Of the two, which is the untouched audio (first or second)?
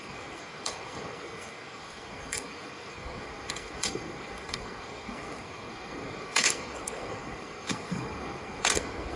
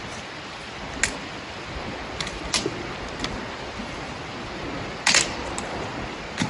second